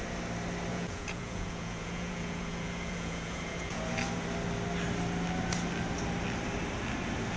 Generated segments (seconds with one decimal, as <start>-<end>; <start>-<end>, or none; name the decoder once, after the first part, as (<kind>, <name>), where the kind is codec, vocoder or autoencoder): 0.7-3.8 (vocoder, Vocos)